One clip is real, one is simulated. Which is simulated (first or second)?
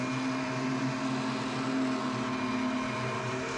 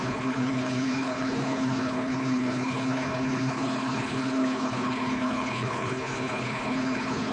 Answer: second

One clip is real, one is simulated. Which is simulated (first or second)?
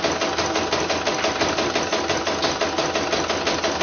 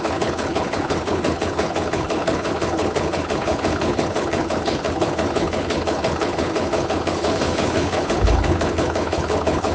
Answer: second